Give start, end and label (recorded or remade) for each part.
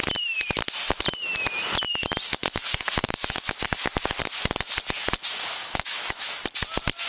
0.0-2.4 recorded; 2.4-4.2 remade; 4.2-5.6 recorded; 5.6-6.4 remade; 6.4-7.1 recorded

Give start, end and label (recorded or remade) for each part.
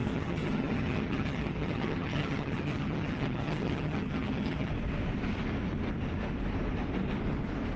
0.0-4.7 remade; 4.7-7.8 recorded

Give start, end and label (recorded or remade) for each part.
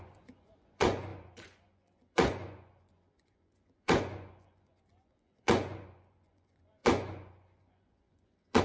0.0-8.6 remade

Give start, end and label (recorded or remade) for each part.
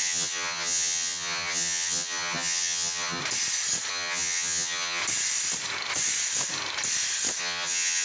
0.0-3.2 remade; 3.2-3.9 recorded; 3.9-5.0 remade; 5.0-7.4 recorded; 7.4-8.0 remade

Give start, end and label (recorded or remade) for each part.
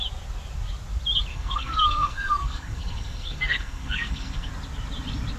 0.0-1.3 recorded; 1.3-4.5 remade; 4.5-5.4 recorded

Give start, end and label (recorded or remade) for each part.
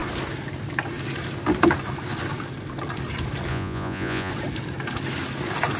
0.0-3.5 recorded; 3.5-4.3 remade; 4.3-5.8 recorded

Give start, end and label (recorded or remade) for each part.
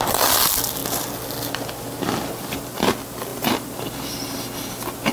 0.0-5.1 recorded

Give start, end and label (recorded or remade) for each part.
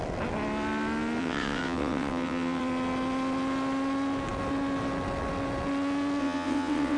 0.0-1.2 recorded; 1.2-2.6 remade; 2.6-6.2 recorded; 6.2-7.0 remade